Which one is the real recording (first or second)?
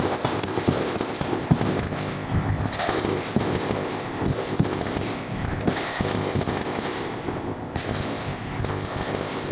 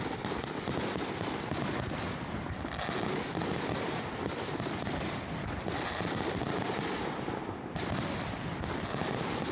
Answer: second